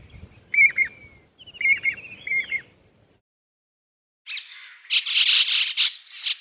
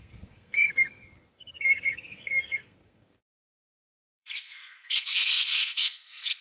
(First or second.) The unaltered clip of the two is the first